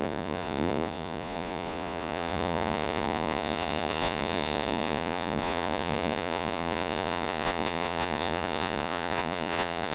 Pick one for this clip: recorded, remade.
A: remade